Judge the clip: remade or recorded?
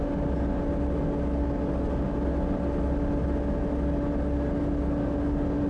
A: recorded